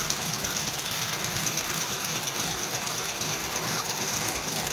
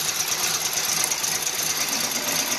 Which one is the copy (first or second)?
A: first